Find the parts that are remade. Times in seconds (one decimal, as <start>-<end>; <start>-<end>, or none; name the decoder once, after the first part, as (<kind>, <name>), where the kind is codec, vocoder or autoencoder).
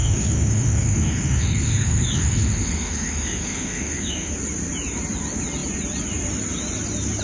0.0-4.3 (autoencoder, DAC-VAE)